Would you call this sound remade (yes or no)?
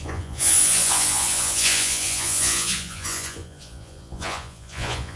yes